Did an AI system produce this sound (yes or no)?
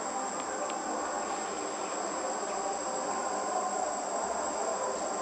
no